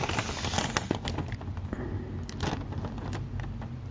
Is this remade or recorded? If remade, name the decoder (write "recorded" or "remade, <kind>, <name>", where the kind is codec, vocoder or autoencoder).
recorded